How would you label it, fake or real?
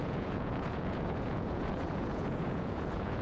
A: fake